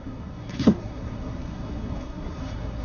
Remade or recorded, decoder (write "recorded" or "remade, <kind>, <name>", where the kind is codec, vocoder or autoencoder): remade, codec, SNAC